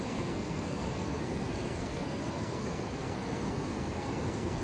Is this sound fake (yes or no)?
yes